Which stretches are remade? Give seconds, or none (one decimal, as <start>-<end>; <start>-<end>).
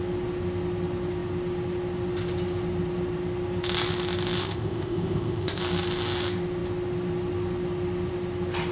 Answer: 4.4-5.6